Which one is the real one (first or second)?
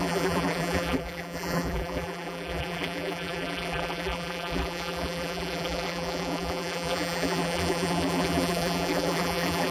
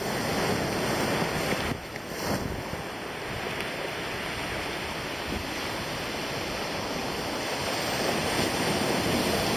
second